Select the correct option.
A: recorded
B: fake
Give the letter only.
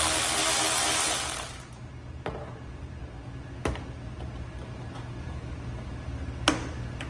A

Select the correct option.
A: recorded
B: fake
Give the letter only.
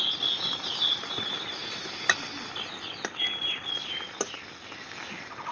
A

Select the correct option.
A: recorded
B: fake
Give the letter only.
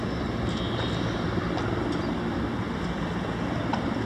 A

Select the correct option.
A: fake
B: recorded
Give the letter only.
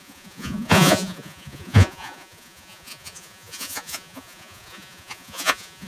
A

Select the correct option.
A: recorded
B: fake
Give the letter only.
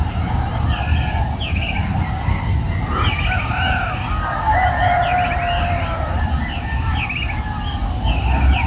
A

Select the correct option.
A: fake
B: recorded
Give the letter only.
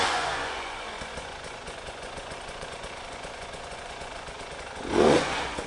A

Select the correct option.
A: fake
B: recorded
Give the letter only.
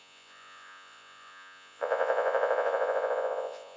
A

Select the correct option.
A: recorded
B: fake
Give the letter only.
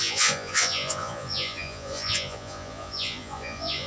B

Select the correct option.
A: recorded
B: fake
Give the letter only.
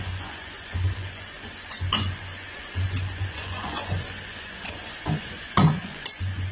B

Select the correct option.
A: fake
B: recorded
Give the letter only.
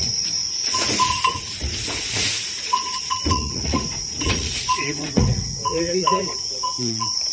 A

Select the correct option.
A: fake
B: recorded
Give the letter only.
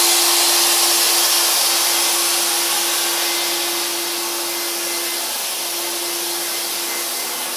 B